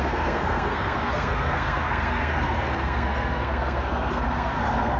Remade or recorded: remade